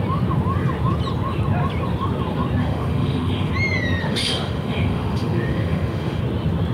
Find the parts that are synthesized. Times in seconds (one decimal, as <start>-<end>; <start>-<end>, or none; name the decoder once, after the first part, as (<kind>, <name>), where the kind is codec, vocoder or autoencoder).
2.6-3.5 (autoencoder, DAC-VAE); 4.0-6.2